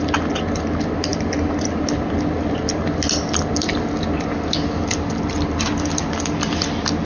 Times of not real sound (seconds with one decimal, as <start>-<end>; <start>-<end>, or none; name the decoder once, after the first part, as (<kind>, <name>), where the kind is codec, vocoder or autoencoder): none